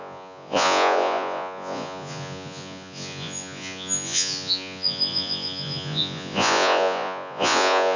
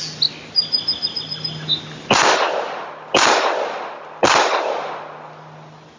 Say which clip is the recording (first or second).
second